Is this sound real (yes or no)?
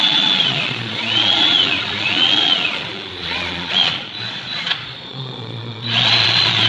no